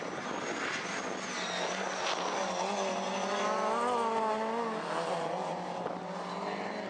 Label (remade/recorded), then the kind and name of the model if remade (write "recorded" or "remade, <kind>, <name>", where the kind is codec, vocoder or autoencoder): recorded